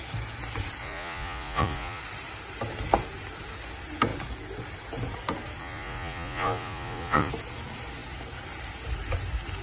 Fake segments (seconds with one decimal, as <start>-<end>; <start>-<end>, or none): 0.8-2.0; 5.6-7.3